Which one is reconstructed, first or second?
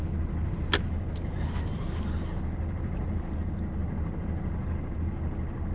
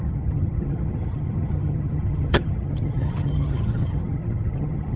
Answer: second